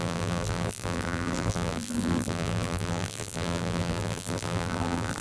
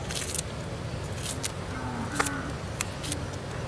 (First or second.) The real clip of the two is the second